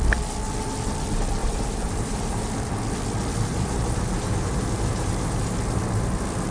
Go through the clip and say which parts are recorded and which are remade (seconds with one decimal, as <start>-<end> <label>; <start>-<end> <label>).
0.0-1.4 recorded; 1.4-2.4 remade; 2.4-3.5 recorded; 3.5-5.5 remade; 5.5-6.5 recorded